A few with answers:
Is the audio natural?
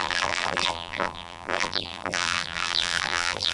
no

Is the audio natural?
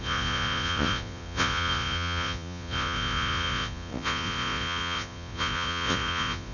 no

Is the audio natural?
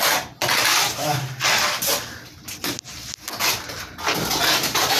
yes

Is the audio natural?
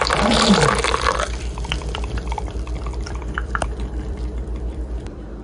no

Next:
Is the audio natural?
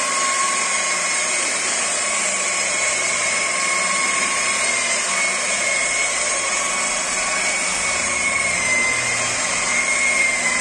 no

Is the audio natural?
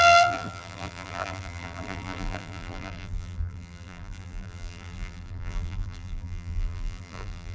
no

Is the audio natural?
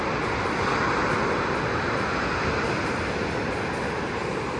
yes